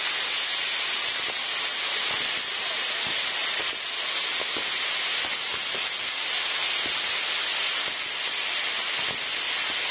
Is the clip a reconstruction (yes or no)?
no